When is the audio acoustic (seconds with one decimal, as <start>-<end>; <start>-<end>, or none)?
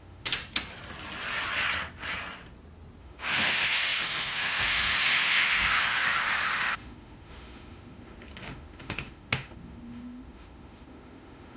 0.4-3.0